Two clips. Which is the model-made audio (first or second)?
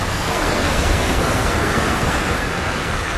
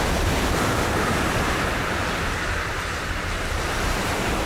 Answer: first